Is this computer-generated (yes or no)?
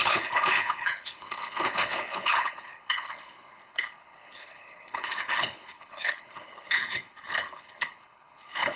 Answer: yes